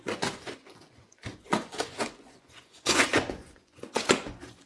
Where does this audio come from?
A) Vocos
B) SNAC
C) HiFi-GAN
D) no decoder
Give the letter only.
A